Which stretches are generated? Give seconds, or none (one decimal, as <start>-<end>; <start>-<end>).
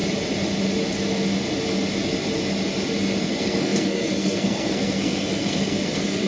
3.2-6.3